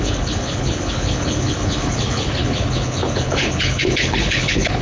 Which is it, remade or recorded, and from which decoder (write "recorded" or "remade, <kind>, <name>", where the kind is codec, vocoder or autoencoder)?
remade, codec, HILCodec